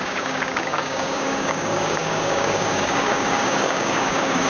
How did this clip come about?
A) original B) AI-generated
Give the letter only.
B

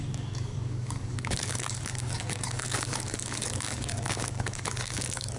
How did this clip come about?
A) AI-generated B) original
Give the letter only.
A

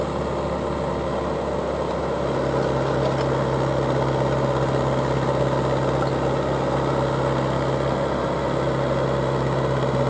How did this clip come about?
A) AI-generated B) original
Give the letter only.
B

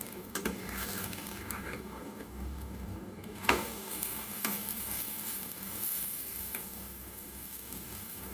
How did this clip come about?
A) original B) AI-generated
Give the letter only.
B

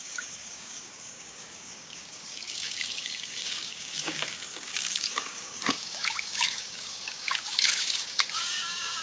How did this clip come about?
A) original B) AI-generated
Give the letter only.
B